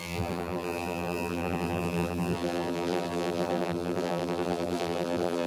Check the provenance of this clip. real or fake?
fake